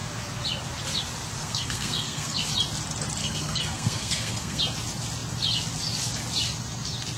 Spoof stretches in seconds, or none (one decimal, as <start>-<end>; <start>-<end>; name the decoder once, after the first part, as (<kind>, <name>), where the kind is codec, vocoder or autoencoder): 1.4-2.4 (codec, SNAC); 3.2-4.6